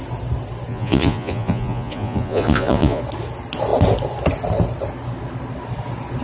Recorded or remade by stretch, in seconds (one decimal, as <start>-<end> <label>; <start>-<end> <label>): 0.0-0.7 recorded; 0.7-3.0 remade; 3.0-6.2 recorded